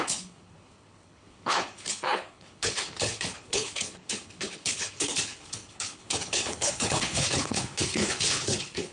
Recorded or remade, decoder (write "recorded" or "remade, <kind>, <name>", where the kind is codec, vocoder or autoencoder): remade, codec, HILCodec